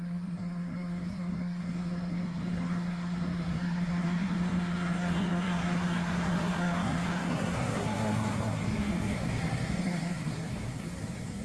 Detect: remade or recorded remade